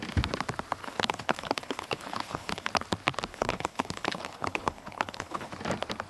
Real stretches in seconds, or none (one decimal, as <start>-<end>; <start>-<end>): 0.0-0.8; 2.7-3.3; 5.5-6.1